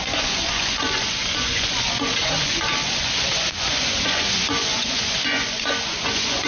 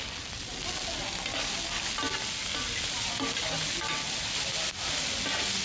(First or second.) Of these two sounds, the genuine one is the second